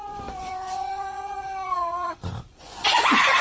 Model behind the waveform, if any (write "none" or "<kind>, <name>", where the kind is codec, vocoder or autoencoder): vocoder, Vocos